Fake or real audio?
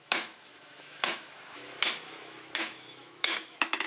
fake